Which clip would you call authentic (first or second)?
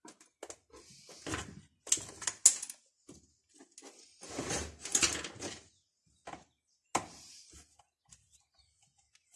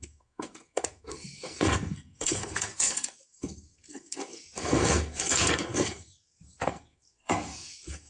first